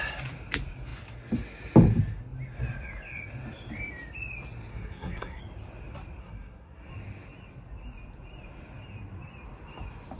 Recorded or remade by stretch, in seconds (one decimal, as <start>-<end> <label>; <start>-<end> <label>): 0.0-4.7 recorded; 4.7-5.4 remade; 5.4-6.2 recorded; 6.2-6.9 remade; 6.9-10.2 recorded